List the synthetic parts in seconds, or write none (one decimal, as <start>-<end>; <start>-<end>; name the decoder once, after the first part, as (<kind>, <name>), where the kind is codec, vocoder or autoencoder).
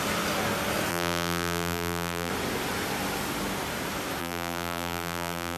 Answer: 0.9-2.3 (vocoder, BigVGAN v2); 4.2-5.6